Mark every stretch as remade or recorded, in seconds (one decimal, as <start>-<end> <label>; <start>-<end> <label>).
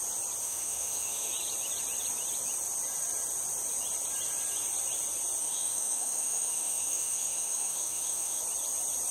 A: 0.0-0.4 recorded; 0.4-1.3 remade; 1.3-5.4 recorded; 5.4-8.4 remade; 8.4-9.1 recorded